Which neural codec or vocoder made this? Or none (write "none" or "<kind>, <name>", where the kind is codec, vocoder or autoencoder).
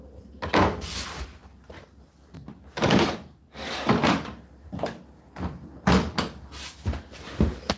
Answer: none